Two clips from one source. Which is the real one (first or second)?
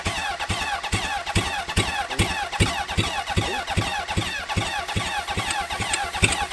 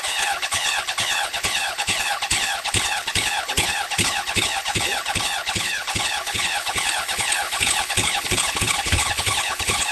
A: first